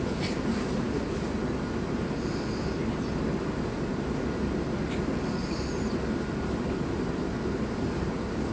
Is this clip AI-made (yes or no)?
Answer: no